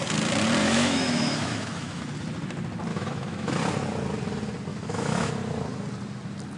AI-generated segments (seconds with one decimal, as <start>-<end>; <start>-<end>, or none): 0.6-2.0; 2.9-3.5; 4.7-5.3